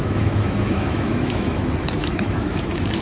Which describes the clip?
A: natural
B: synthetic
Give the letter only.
B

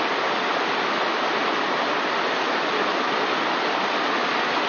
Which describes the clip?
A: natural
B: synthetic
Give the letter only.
A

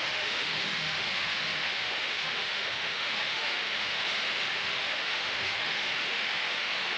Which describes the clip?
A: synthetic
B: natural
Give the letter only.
A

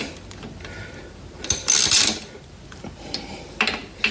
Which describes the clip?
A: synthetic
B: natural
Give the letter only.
B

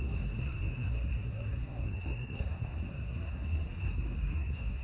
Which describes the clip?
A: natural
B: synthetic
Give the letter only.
B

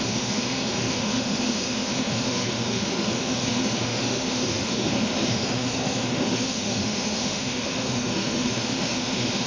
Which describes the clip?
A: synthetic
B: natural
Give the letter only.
A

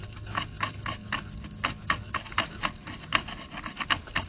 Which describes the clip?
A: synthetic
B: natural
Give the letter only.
B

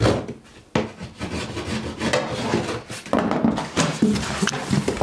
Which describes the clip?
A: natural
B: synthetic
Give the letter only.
A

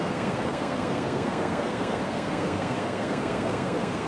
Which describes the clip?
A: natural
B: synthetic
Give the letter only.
B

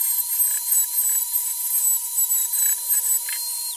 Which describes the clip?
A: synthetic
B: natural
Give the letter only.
B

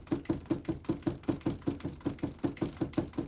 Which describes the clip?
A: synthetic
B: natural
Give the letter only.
B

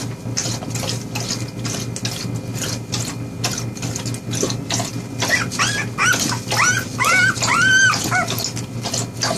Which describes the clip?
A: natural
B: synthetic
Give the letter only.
A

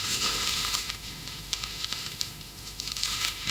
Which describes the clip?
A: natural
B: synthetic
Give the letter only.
B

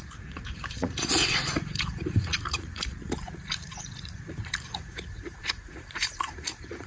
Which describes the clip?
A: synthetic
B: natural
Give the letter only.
A